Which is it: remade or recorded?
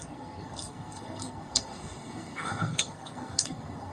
remade